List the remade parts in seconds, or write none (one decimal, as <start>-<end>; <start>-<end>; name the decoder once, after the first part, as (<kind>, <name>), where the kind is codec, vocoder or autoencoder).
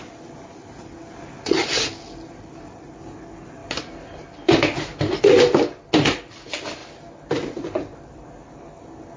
none